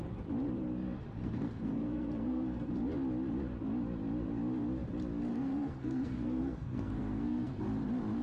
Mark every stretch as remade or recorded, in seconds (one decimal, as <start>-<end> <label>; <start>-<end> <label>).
0.0-1.2 recorded; 1.2-2.7 remade; 2.7-5.3 recorded; 5.3-7.6 remade; 7.6-8.2 recorded